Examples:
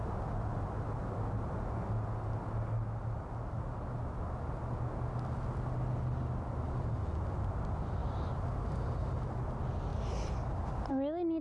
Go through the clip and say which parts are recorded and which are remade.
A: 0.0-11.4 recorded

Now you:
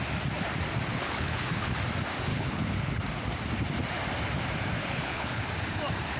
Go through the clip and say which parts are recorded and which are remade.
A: 0.0-0.9 recorded; 0.9-1.7 remade; 1.7-2.3 recorded; 2.3-3.0 remade; 3.0-4.8 recorded; 4.8-5.4 remade; 5.4-6.2 recorded

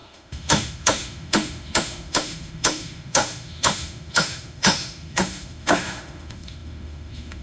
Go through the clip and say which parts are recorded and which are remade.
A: 0.0-7.4 remade

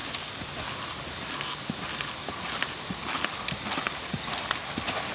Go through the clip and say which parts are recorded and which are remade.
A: 0.0-5.1 recorded

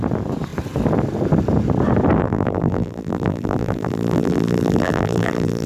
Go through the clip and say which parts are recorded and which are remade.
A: 0.0-2.2 recorded; 2.2-5.7 remade